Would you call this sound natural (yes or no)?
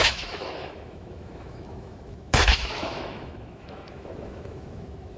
no